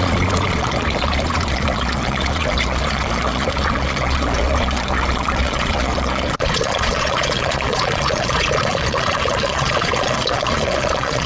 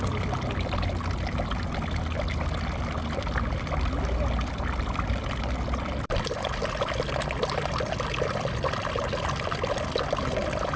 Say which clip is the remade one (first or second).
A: first